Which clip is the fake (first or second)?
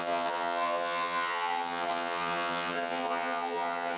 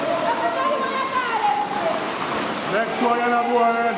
first